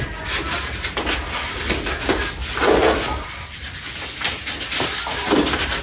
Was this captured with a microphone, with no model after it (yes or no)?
yes